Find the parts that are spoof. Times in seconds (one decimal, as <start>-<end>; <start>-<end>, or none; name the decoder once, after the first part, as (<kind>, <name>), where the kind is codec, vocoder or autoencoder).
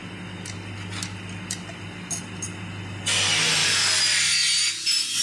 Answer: none